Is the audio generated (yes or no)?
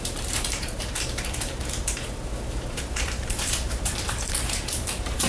yes